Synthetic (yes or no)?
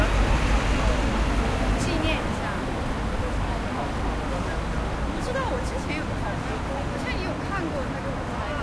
no